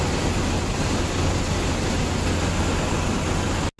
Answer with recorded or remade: recorded